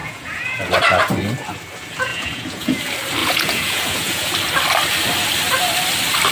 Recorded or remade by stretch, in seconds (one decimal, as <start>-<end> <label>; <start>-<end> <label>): 0.0-0.7 remade; 0.7-2.1 recorded; 2.1-2.8 remade; 2.8-3.2 recorded; 3.2-4.3 remade; 4.3-6.3 recorded

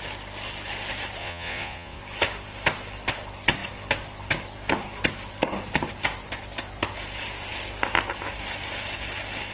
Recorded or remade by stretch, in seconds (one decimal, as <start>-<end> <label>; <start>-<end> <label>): 0.0-1.2 recorded; 1.2-2.0 remade; 2.0-9.5 recorded

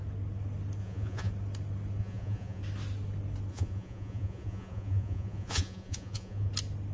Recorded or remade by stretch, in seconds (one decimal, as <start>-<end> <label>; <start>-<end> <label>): 0.0-0.8 recorded; 0.8-1.3 remade; 1.3-2.0 recorded; 2.0-2.6 remade; 2.6-3.5 recorded; 3.5-6.5 remade; 6.5-6.9 recorded

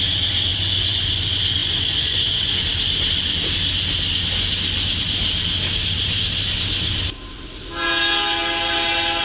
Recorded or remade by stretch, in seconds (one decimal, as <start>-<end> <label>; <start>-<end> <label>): 0.0-0.5 recorded; 0.5-1.1 remade; 1.1-1.6 recorded; 1.6-2.6 remade; 2.6-9.2 recorded

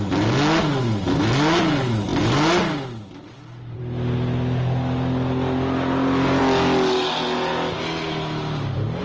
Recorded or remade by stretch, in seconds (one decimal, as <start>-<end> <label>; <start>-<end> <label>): 0.0-9.0 recorded

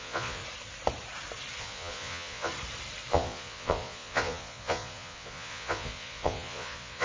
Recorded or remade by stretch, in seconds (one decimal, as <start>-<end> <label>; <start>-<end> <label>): 0.0-0.4 remade; 0.4-1.6 recorded; 1.6-2.5 remade; 2.5-3.1 recorded; 3.1-7.0 remade

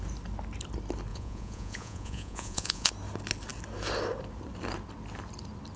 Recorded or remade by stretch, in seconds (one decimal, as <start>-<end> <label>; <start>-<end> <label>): 0.0-1.1 recorded; 1.1-2.9 remade; 2.9-5.8 recorded